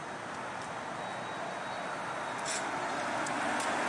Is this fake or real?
real